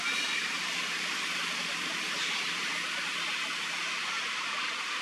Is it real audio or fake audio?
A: real